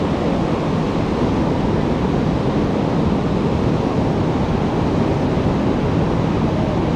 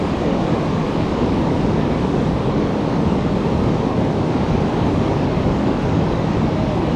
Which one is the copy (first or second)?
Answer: second